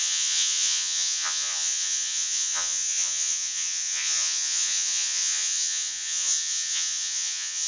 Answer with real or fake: fake